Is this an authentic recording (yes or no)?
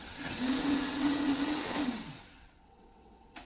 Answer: no